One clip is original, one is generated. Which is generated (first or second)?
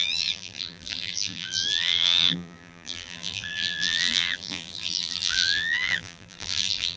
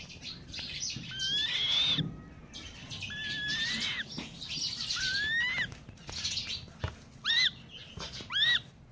first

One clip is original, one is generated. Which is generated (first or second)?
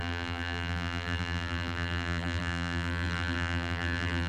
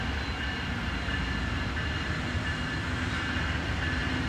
first